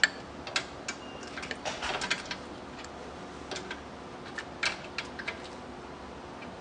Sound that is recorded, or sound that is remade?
recorded